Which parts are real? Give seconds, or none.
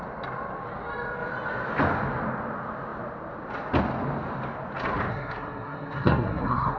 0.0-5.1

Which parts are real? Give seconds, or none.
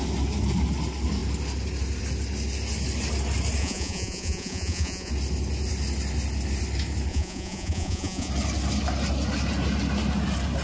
0.0-3.6; 5.1-7.1; 8.3-10.6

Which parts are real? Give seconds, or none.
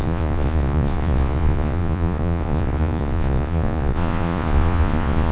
none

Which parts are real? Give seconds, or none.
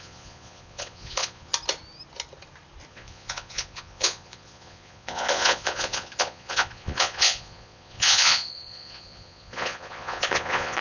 1.5-2.9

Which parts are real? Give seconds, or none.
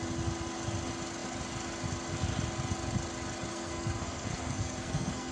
0.0-3.5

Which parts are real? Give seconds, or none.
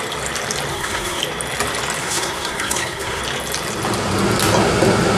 0.0-0.7; 1.2-2.0; 3.2-5.2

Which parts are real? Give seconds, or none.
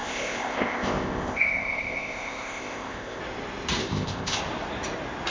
3.2-3.8; 4.4-5.3